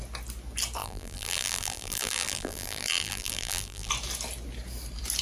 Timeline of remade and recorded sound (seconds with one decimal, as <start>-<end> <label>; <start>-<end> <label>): 0.0-0.8 recorded; 0.8-3.9 remade; 3.9-5.2 recorded